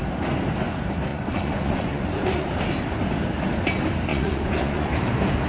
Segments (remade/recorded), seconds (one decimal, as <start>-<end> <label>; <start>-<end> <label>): 0.0-1.1 recorded; 1.1-2.5 remade; 2.5-4.1 recorded; 4.1-4.9 remade; 4.9-5.5 recorded